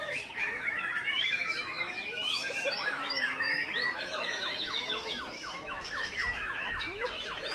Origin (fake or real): fake